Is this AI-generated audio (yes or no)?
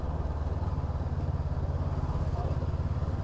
no